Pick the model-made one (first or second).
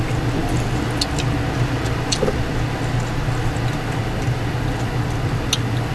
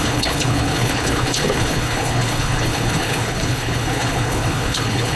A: second